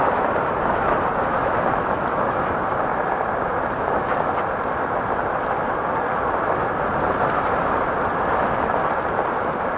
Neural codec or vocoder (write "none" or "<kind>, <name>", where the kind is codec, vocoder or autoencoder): none